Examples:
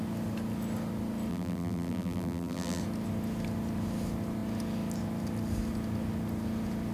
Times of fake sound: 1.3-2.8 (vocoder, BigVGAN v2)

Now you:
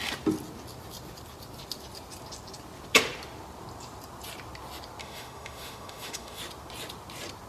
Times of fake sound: 5.0-6.4 (autoencoder, DAC-VAE)

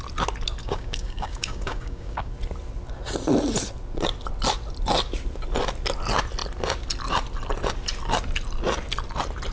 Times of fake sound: 0.6-2.3 (codec, DAC)

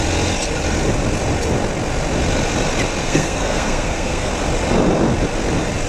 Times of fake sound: 3.0-4.3 (codec, SNAC)

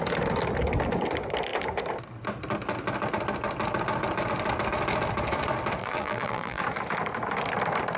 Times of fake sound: 5.8-6.6 (vocoder, BigVGAN v2)